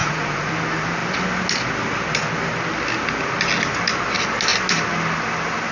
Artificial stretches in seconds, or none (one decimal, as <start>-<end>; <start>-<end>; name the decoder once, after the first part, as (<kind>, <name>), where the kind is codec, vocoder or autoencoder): 0.0-0.5 (vocoder, Vocos)